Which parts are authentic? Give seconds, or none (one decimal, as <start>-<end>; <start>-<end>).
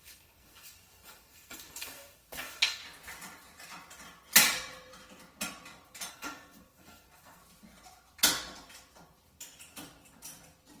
2.8-6.1; 7.4-10.8